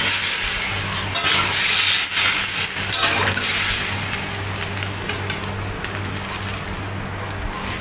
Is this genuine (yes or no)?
yes